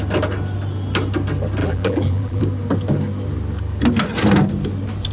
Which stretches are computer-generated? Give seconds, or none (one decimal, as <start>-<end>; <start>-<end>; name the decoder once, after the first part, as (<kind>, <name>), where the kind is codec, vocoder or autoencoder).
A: 1.6-2.4 (vocoder, BigVGAN v2)